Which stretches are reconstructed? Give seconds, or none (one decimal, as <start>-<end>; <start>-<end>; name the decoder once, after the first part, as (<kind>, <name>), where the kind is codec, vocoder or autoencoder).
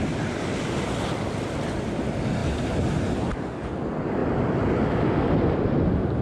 none